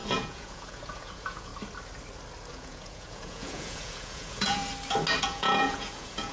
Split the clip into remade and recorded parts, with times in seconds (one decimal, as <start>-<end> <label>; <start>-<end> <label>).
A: 0.0-1.5 remade; 1.5-2.5 recorded; 2.5-4.6 remade; 4.6-5.2 recorded; 5.2-6.3 remade